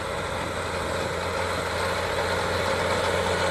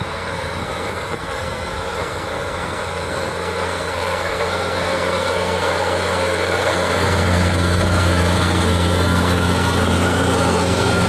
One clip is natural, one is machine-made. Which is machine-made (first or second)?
second